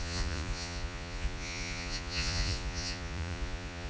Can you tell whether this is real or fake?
fake